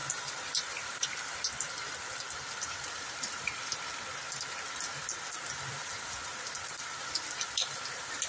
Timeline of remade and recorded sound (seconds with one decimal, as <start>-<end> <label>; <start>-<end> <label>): 0.0-3.7 remade; 3.7-5.8 recorded; 5.8-8.3 remade